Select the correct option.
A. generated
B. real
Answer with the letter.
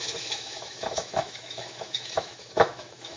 A